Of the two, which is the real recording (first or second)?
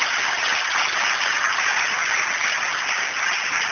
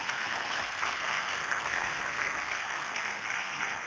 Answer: first